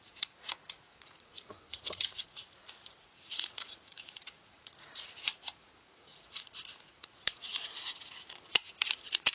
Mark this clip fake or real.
fake